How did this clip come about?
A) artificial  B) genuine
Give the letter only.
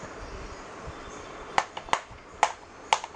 B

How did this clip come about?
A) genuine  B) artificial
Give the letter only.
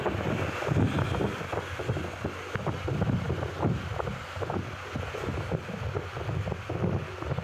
A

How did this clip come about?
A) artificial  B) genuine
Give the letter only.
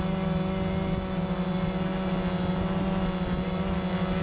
B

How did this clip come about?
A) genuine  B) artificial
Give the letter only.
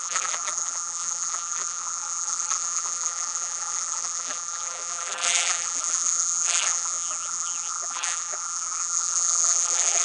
B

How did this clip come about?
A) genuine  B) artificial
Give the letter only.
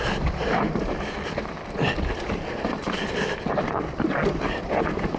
B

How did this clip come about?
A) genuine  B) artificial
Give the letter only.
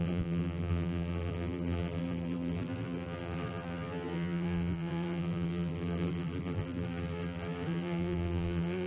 B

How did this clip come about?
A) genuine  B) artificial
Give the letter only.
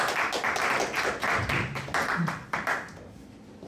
A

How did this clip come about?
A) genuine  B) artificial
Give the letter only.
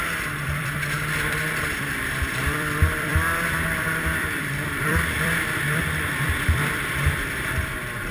B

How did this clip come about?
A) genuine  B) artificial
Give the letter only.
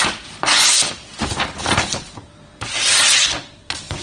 B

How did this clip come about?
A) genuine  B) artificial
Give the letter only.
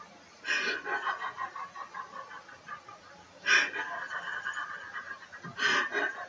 A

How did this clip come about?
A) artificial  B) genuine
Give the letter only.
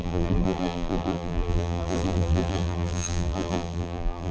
A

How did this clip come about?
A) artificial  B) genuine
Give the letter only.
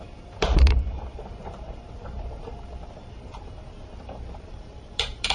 A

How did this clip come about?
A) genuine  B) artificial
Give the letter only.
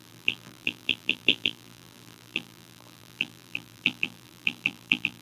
B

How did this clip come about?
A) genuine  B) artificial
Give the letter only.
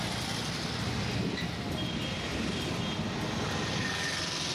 A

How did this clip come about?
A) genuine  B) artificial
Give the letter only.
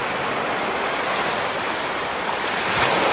B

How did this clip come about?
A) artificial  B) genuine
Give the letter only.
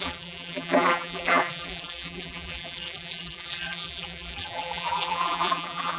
A